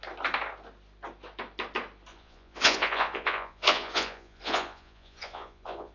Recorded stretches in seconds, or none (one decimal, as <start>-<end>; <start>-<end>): 0.0-2.1